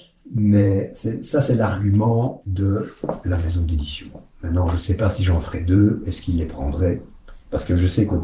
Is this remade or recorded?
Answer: remade